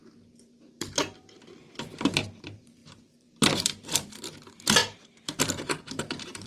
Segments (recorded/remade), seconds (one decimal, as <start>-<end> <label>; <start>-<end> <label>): 0.0-6.5 remade